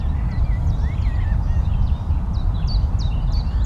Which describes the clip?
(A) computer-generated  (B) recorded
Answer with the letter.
B